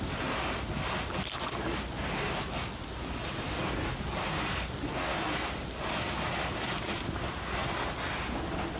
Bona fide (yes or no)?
yes